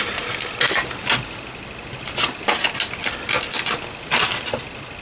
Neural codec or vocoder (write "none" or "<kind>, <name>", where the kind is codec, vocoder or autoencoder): none